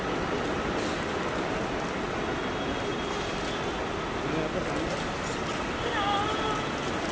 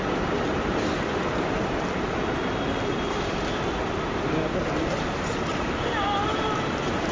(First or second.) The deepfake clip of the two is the second